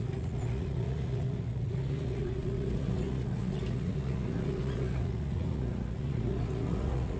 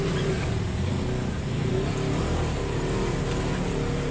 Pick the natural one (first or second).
second